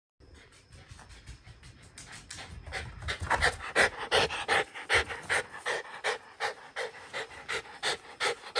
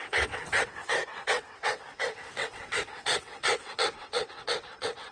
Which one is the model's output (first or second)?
second